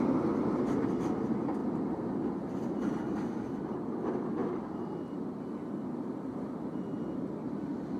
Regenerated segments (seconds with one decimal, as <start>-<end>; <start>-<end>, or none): 4.4-4.9